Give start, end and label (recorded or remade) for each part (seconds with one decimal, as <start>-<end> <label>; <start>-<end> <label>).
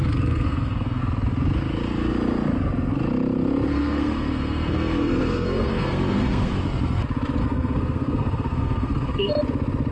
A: 0.0-1.0 remade; 1.0-3.7 recorded; 3.7-6.5 remade; 6.5-7.4 recorded; 7.4-9.3 remade; 9.3-9.9 recorded